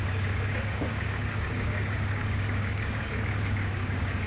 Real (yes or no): no